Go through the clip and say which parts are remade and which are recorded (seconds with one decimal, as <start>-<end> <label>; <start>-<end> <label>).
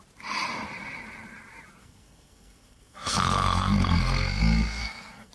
0.0-1.8 recorded; 1.8-5.3 remade